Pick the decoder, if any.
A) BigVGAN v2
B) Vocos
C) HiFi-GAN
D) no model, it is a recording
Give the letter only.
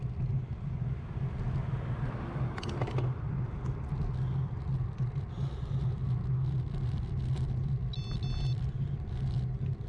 D